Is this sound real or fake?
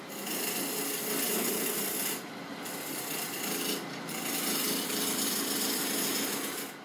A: real